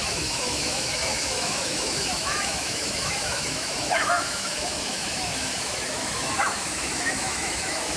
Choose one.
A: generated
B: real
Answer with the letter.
A